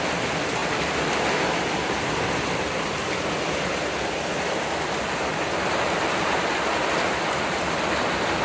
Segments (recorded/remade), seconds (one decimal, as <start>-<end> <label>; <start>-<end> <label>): 0.0-8.4 recorded